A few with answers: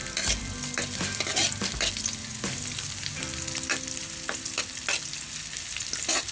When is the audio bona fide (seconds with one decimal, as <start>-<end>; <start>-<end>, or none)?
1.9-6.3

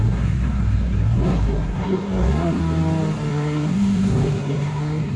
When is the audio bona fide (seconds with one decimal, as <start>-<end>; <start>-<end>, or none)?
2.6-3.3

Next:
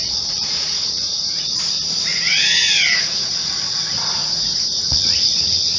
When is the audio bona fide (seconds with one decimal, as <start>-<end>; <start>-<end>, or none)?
1.7-2.1; 3.3-4.2

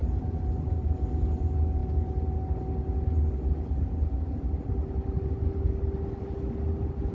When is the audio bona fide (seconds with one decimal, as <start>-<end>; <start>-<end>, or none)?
0.0-7.1

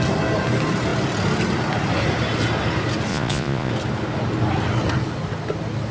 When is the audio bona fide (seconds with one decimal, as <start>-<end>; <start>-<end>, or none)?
0.0-3.1; 3.7-5.9

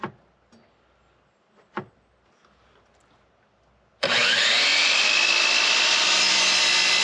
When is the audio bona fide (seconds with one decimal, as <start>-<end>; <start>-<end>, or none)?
0.0-7.0

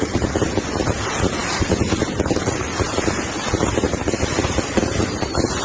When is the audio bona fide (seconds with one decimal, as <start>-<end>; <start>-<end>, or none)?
0.0-5.6